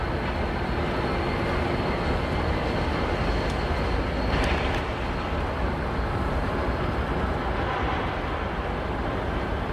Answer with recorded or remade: recorded